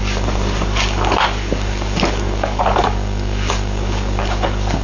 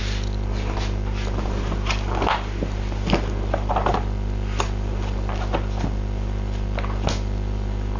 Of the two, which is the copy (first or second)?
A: first